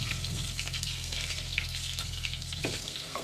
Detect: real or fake fake